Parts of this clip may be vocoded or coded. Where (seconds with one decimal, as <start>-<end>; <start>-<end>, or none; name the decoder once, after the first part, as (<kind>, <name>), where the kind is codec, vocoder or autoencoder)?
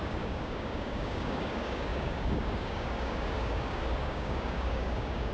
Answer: 0.0-5.3 (codec, DAC)